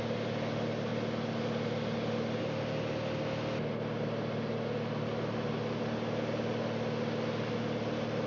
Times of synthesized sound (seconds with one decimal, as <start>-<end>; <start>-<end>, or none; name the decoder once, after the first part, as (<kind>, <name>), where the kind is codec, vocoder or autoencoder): none

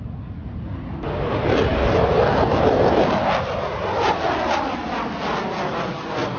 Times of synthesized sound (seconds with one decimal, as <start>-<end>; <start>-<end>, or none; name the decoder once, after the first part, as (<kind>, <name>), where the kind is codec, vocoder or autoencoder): none

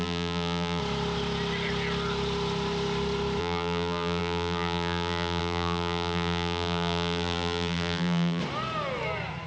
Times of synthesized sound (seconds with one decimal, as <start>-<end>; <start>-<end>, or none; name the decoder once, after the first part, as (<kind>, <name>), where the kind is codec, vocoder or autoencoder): 0.0-0.8 (vocoder, BigVGAN v2); 3.4-8.4

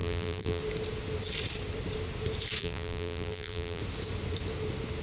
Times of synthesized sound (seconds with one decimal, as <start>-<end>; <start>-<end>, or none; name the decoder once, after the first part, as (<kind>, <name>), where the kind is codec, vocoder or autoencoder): 0.0-0.6 (vocoder, BigVGAN v2); 2.6-3.8

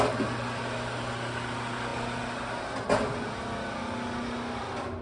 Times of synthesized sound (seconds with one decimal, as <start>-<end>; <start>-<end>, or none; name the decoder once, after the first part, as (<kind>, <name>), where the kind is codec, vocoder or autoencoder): none

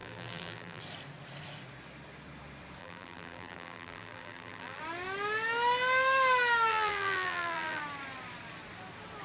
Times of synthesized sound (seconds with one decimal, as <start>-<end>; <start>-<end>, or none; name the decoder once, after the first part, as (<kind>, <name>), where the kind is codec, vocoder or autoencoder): 0.0-0.8 (vocoder, BigVGAN v2); 2.8-4.8; 6.7-7.8

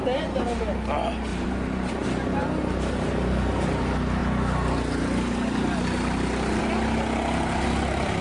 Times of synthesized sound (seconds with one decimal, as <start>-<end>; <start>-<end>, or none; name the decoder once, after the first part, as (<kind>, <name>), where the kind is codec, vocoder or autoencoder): 1.3-1.9 (vocoder, BigVGAN v2)

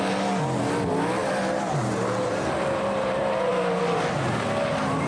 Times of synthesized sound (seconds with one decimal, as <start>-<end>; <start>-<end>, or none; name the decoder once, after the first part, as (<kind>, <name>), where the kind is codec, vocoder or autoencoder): 1.2-3.8 (vocoder, BigVGAN v2)